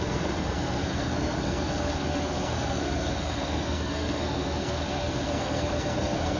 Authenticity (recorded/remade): remade